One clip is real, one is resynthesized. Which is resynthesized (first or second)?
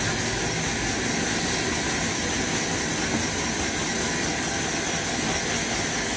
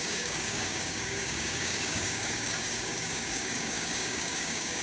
second